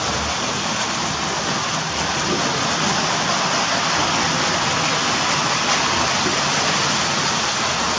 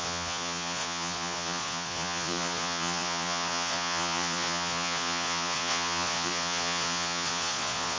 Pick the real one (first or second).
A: first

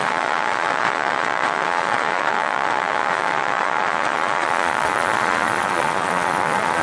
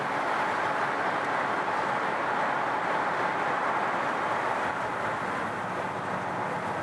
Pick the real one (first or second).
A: second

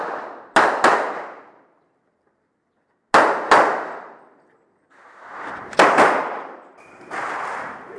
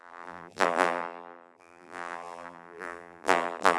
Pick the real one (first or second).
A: first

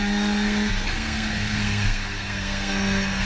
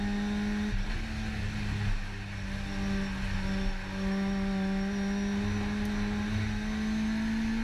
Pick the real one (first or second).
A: second